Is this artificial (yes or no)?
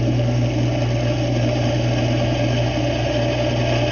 no